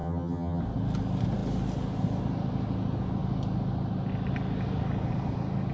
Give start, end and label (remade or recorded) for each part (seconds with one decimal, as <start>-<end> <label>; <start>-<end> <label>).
0.0-0.6 remade; 0.6-5.7 recorded

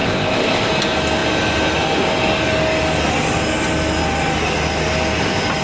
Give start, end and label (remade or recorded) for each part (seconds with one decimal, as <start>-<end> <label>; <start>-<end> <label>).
0.0-0.7 remade; 0.7-5.6 recorded

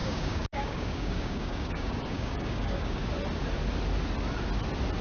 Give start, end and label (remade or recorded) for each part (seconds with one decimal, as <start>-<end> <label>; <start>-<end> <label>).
0.0-3.0 remade; 3.0-5.0 recorded

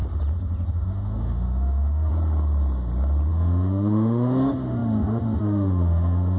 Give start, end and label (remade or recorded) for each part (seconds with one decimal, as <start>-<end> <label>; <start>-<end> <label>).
0.0-0.7 recorded; 0.7-2.1 remade; 2.1-3.3 recorded; 3.3-6.4 remade